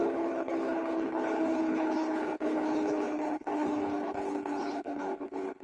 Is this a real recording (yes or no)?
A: no